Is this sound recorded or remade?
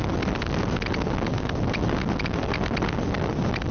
recorded